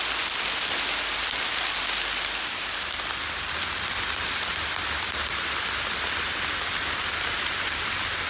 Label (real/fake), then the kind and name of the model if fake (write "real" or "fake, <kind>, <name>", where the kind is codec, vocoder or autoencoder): real